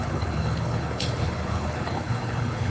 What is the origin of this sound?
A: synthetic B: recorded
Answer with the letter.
A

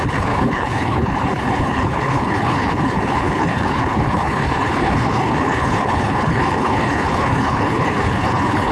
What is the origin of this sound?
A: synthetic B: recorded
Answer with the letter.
A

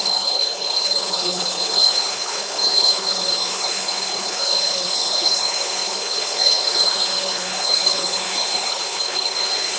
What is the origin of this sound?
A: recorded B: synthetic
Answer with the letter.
B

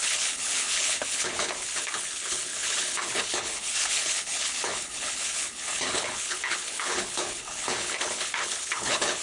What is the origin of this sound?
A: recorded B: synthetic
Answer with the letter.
B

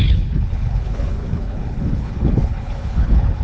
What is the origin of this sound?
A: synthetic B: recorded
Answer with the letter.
A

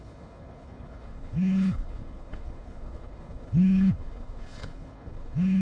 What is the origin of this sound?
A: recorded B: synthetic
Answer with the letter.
B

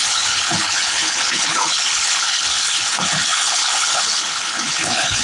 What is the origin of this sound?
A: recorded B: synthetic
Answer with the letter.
B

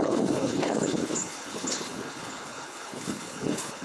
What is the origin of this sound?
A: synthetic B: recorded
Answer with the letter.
A